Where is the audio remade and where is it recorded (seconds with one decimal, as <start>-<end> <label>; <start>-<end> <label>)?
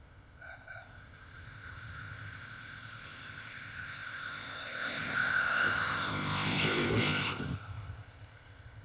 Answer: 0.0-8.8 remade